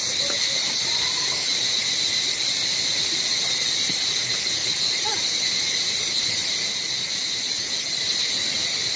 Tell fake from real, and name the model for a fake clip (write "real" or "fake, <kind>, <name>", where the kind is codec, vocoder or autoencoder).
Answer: real